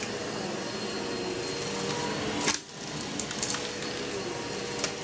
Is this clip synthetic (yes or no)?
no